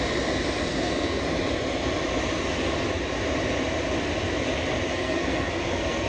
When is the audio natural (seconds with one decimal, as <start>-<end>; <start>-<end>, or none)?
0.0-0.7; 1.2-4.9